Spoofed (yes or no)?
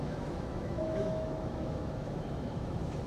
yes